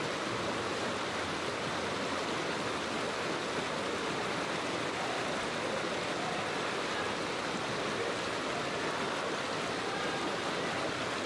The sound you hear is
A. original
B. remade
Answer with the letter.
A